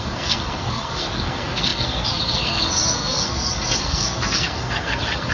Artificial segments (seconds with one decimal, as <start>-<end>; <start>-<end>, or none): 0.0-5.3